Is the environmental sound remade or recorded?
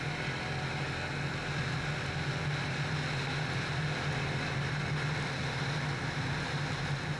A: recorded